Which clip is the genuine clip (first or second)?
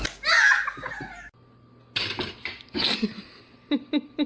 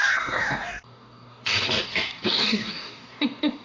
first